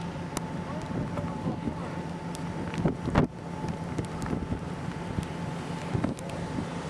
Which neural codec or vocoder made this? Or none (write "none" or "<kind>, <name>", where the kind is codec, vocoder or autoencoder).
none